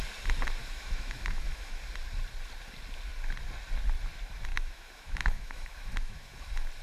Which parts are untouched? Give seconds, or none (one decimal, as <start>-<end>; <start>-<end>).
0.0-0.6; 1.8-4.5; 6.3-6.8